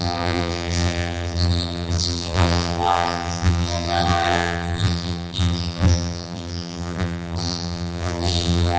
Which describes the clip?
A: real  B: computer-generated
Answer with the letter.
B